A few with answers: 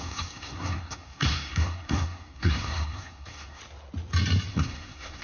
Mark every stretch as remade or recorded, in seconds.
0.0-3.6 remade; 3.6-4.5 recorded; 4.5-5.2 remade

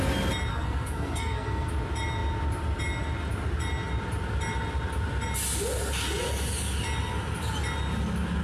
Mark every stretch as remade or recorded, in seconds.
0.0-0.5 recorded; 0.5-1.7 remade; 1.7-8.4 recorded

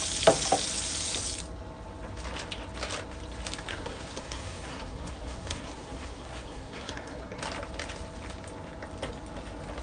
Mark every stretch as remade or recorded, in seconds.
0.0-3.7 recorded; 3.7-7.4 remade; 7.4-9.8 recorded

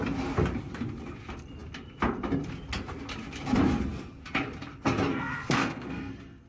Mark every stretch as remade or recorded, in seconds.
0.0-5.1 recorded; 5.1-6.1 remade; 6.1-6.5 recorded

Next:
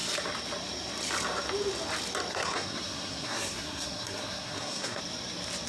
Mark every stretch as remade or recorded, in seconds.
0.0-2.3 recorded; 2.3-5.0 remade; 5.0-5.7 recorded